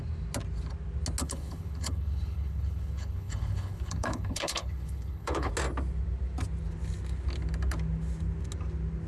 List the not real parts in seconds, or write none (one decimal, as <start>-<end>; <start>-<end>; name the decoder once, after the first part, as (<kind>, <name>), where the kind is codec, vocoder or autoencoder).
1.2-5.5 (codec, HILCodec)